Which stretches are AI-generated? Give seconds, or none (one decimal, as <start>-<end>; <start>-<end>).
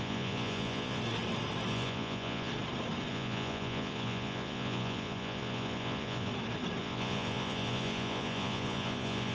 0.0-1.0; 1.7-2.5; 3.1-6.3; 6.8-9.3